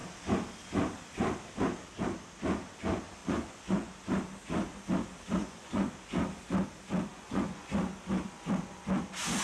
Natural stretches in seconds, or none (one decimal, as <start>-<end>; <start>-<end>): 0.0-3.2; 3.9-5.4; 5.9-7.1; 7.7-9.4